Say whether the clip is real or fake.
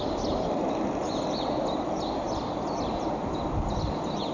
real